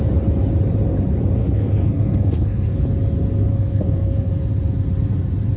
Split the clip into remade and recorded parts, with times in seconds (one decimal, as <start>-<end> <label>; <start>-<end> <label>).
0.0-1.4 recorded; 1.4-2.8 remade; 2.8-3.5 recorded; 3.5-4.3 remade; 4.3-5.6 recorded